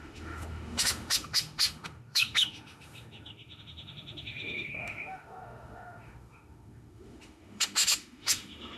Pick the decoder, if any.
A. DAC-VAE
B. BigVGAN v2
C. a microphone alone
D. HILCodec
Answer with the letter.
A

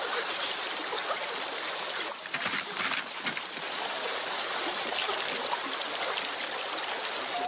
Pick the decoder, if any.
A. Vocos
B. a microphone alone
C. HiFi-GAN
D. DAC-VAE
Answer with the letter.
B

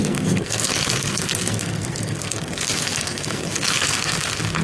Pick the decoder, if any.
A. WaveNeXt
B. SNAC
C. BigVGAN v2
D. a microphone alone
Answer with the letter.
B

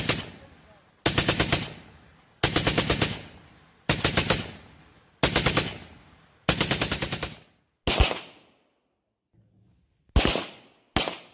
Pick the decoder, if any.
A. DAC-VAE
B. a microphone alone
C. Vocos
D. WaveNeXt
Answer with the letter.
B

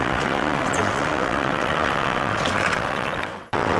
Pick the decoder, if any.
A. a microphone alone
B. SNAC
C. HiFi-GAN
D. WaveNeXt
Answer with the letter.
D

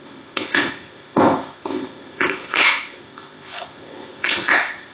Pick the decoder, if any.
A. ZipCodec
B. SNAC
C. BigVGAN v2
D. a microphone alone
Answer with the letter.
A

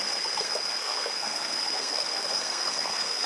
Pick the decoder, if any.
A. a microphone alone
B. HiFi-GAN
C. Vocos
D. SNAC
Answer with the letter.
D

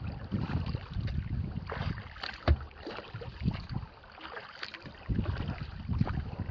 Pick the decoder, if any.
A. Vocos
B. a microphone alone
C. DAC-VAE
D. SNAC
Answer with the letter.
B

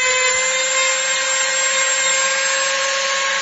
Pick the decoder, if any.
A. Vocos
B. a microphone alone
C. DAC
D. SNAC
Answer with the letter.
B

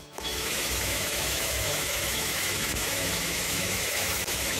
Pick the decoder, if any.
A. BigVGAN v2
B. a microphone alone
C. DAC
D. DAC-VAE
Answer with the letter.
D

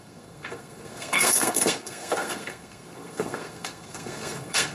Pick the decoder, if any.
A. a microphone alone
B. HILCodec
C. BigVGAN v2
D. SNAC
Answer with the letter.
D